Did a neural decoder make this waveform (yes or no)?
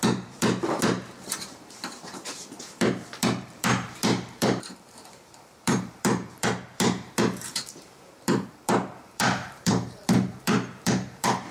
yes